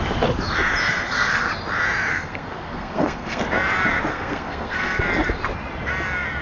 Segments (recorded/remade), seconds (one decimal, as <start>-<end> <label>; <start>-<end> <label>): 0.0-0.8 recorded; 0.8-1.5 remade; 1.5-2.1 recorded; 2.1-3.4 remade; 3.4-4.1 recorded; 4.1-5.0 remade; 5.0-6.4 recorded